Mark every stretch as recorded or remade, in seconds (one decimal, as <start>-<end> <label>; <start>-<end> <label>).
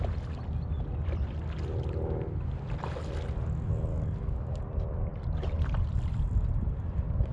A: 0.0-3.9 recorded; 3.9-4.6 remade; 4.6-7.3 recorded